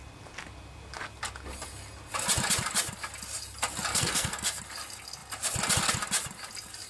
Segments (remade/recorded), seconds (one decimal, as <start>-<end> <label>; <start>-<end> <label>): 0.0-3.9 recorded; 3.9-4.6 remade; 4.6-6.9 recorded